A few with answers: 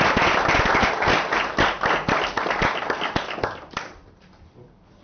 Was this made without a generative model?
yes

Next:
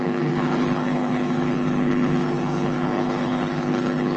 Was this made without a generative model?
no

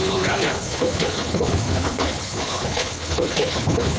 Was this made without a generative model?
no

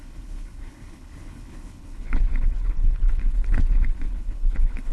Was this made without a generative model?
no